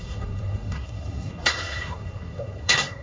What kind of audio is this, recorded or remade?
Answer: remade